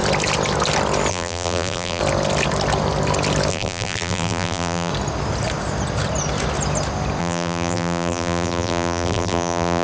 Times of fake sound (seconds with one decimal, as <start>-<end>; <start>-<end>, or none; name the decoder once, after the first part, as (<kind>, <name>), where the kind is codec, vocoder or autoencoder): 1.1-2.0 (vocoder, BigVGAN v2); 3.5-4.9; 7.2-9.8